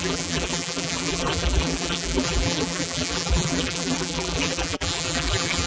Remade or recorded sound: remade